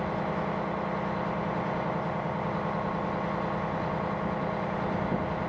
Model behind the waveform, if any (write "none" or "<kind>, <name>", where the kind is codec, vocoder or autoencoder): none